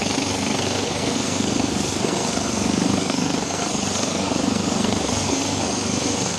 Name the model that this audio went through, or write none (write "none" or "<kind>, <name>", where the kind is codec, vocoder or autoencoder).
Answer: codec, SNAC